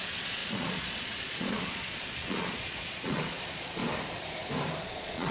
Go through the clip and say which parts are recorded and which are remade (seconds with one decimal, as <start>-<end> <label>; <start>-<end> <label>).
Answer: 0.0-3.8 remade; 3.8-4.8 recorded; 4.8-5.3 remade